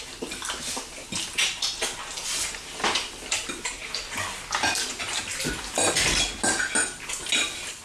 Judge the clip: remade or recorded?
recorded